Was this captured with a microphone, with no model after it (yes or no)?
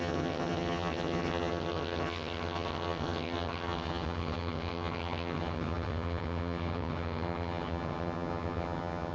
no